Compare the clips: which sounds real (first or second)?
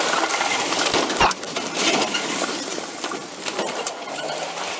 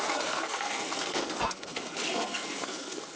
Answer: first